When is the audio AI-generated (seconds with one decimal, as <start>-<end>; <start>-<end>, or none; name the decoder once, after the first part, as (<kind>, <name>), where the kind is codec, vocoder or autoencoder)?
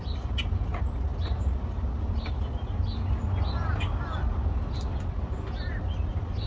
none